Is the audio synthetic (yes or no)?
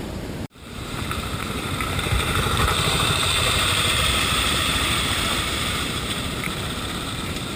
yes